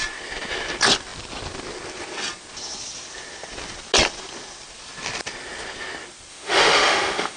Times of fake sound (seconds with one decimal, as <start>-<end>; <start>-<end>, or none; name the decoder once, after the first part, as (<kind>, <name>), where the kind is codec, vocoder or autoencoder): 6.3-7.4 (autoencoder, DAC-VAE)